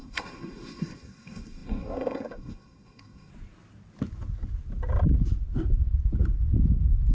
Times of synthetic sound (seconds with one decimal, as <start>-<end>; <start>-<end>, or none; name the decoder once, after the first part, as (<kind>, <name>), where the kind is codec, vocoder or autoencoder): 0.0-3.3 (codec, SNAC)